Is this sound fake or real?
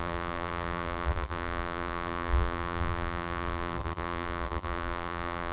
fake